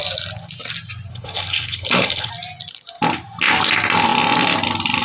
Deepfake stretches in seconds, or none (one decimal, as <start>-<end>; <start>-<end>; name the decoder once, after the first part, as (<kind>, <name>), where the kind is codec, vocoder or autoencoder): 1.1-2.3 (codec, HILCodec)